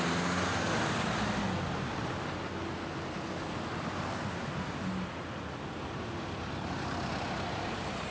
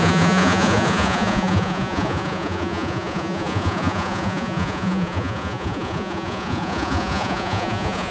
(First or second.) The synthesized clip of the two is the second